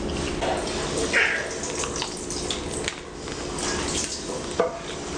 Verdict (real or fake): real